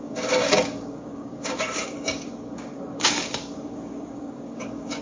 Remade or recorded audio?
remade